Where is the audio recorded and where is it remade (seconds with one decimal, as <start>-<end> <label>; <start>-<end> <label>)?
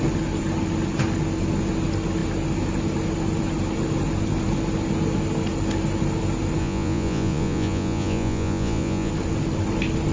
0.0-6.6 recorded; 6.6-9.1 remade; 9.1-10.1 recorded